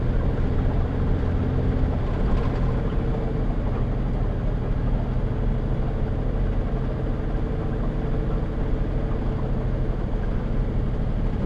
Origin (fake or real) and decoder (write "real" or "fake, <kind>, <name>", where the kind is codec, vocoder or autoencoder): real